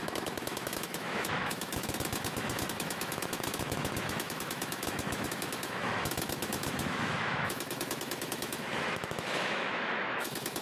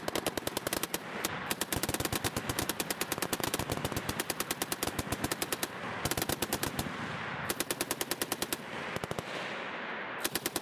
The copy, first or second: first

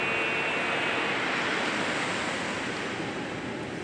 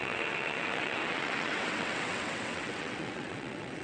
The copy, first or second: second